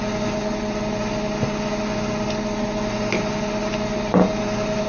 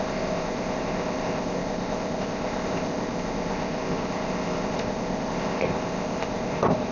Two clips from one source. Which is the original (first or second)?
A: first